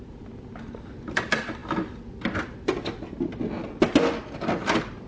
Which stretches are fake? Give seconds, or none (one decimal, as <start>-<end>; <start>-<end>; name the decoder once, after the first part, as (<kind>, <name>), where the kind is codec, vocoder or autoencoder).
none

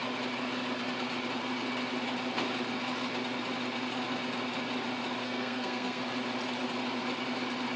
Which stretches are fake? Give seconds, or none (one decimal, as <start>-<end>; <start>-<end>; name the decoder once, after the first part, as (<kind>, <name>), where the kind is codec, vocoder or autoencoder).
5.2-6.0 (codec, SNAC)

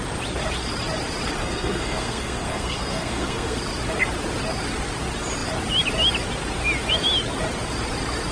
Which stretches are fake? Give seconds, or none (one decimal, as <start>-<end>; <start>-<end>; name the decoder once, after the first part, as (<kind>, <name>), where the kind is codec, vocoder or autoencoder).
1.4-3.6 (codec, SNAC)

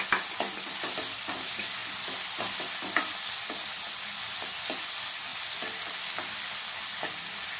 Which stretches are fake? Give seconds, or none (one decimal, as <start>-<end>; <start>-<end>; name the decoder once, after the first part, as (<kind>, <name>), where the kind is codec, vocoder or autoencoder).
none

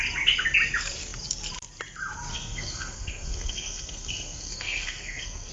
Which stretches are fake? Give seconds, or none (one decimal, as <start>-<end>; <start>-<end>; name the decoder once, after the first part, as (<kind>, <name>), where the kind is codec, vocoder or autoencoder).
2.3-5.5 (codec, SNAC)

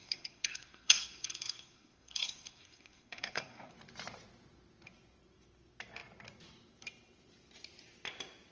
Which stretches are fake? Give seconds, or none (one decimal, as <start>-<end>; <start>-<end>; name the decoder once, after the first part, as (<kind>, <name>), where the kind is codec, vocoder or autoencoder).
0.0-3.7 (codec, SNAC)

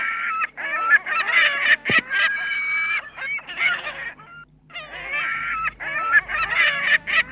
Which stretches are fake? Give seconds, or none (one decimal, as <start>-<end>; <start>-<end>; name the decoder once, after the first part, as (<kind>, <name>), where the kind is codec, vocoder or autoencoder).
none

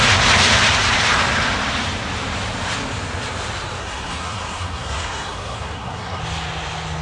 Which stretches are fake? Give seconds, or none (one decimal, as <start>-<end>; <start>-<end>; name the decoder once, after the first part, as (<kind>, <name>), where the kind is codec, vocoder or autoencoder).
3.8-6.2 (codec, SNAC)